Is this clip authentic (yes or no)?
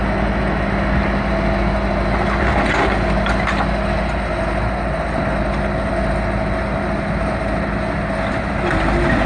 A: yes